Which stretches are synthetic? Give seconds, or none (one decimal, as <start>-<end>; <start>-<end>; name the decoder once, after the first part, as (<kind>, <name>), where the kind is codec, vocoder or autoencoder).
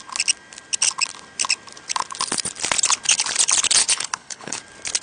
3.8-4.6 (codec, HILCodec)